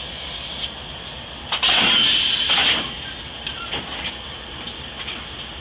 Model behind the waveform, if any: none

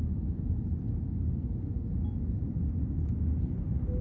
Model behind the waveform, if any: none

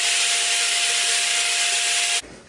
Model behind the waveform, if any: none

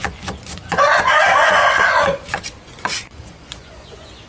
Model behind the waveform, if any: vocoder, Vocos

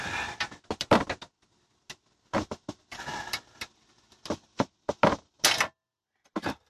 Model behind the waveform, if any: none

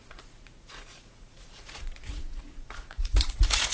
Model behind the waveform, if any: vocoder, Vocos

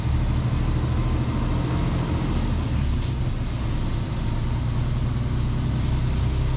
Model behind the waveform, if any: none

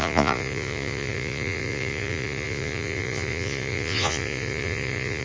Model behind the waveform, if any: vocoder, Vocos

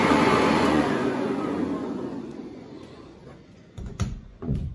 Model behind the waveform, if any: vocoder, Vocos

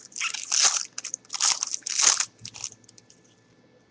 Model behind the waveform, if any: none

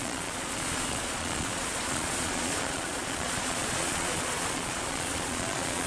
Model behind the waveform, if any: vocoder, Vocos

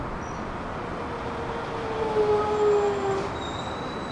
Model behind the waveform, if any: none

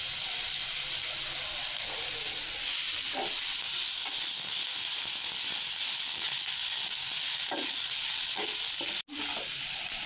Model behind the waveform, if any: none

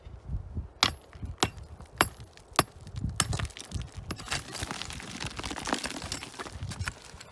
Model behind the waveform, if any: none